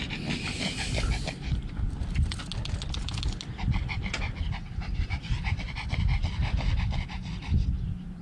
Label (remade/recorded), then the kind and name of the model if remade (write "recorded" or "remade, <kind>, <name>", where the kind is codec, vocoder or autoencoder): recorded